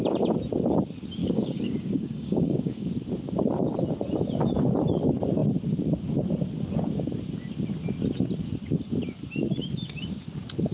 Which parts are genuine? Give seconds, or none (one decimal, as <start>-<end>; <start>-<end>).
0.0-1.2; 2.9-10.7

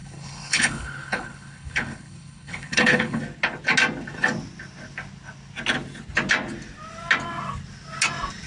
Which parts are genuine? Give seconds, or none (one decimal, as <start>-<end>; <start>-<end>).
3.2-8.5